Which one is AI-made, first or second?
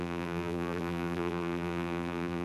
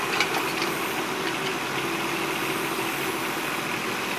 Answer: first